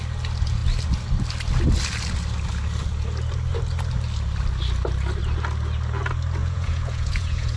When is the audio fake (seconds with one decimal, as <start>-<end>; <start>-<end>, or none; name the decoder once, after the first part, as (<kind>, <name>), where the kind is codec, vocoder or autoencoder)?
6.4-7.6 (vocoder, Vocos)